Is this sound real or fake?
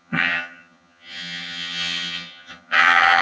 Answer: fake